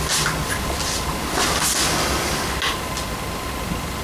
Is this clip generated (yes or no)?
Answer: no